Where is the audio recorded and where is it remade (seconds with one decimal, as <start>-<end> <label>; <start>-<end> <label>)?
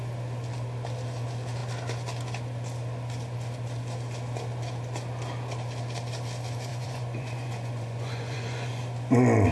0.0-6.7 recorded; 6.7-8.8 remade; 8.8-9.5 recorded